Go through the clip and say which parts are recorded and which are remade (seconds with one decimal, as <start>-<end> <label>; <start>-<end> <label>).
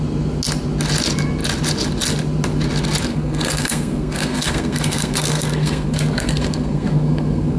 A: 0.0-3.1 recorded; 3.1-7.6 remade